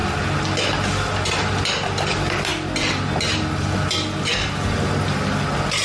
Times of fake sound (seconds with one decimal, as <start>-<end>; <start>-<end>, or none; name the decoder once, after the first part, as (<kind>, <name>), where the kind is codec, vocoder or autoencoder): none